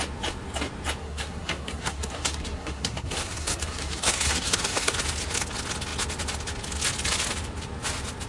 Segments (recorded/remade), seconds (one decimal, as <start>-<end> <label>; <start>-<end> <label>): 0.0-1.0 recorded; 1.0-4.9 remade; 4.9-8.3 recorded